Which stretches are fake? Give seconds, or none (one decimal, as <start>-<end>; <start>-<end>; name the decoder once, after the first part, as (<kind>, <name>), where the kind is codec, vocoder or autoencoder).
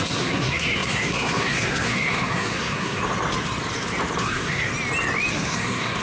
0.0-3.0 (codec, SNAC); 4.2-4.7; 5.3-6.0